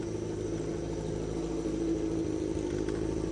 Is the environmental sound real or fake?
real